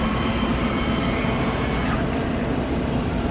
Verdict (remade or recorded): remade